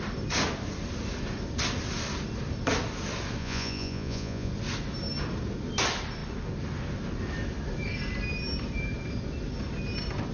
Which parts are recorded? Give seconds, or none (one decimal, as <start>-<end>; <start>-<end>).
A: 0.0-3.4; 4.5-10.3